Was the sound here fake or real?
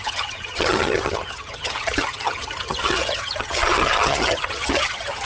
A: fake